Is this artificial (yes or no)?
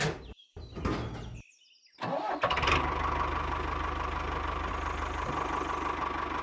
no